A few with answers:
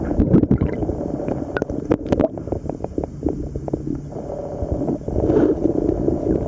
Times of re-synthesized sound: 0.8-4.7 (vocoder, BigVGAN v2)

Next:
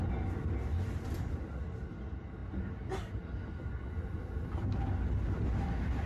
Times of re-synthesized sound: none

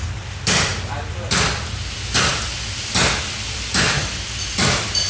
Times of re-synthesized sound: none

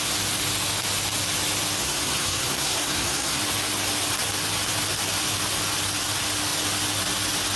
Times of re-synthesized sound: 1.8-3.4 (codec, SNAC)